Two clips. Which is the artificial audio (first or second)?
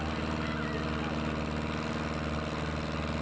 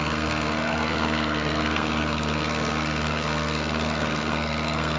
second